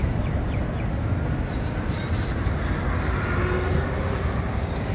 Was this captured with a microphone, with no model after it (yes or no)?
yes